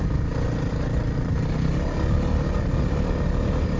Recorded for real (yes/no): yes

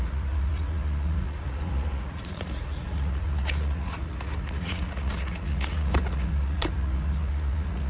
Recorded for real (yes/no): no